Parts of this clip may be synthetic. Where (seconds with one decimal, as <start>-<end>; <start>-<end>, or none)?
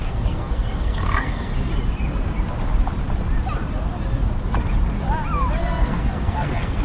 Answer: 0.0-1.5; 5.6-6.8